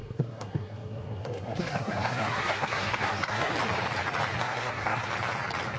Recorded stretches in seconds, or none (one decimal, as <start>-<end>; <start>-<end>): 3.5-4.4; 5.1-5.8